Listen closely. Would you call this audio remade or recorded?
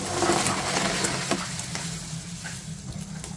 recorded